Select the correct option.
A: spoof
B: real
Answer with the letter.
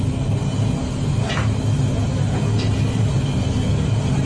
B